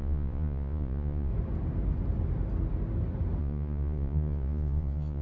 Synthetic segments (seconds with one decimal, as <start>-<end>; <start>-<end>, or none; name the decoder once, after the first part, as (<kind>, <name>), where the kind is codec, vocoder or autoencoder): 0.0-1.3 (vocoder, Vocos); 3.4-5.2